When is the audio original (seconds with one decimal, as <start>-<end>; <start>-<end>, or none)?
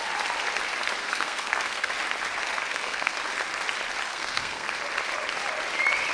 0.0-1.0; 1.9-2.7; 3.2-4.1; 4.7-6.1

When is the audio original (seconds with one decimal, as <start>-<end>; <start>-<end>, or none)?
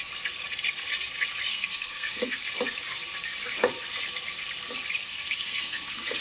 0.0-1.5; 2.4-5.1